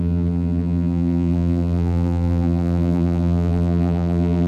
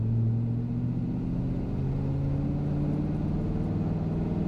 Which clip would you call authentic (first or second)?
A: second